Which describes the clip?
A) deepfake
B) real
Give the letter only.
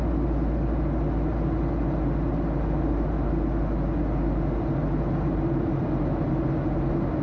B